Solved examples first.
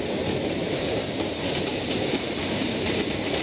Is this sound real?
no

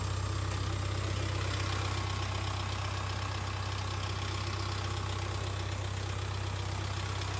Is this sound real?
yes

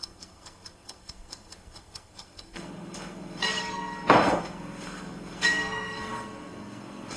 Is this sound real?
no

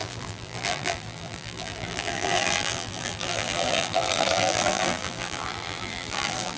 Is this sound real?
no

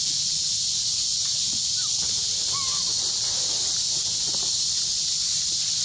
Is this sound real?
yes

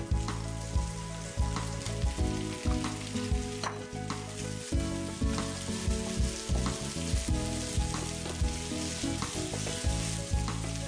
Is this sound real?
yes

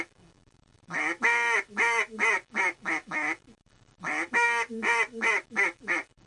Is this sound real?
no